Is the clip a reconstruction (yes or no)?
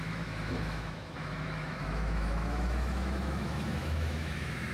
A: yes